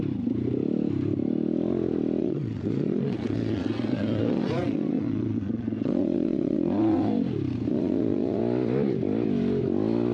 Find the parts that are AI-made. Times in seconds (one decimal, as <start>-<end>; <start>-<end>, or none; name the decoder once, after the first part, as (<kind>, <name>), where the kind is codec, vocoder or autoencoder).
2.2-7.1 (vocoder, Vocos); 7.7-8.4